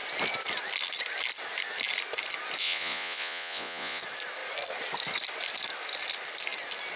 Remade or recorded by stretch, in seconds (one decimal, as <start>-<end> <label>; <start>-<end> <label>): 0.0-2.6 recorded; 2.6-4.0 remade; 4.0-7.0 recorded